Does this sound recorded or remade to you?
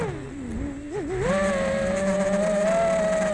recorded